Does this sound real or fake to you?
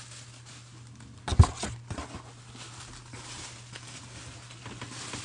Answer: real